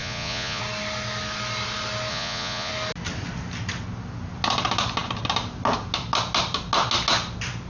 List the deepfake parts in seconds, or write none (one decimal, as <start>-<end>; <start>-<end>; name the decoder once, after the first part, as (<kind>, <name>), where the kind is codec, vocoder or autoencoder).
0.0-0.6 (vocoder, Vocos); 2.1-2.7